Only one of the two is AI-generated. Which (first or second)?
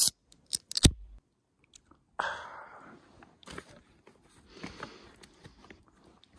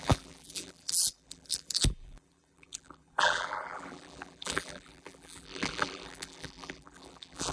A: second